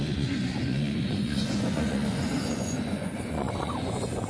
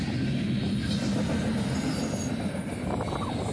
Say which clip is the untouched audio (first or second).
second